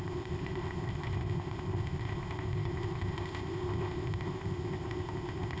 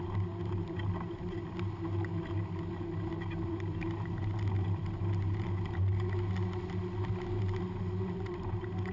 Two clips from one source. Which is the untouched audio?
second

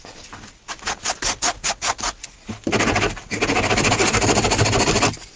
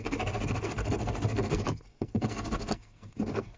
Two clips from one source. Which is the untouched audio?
first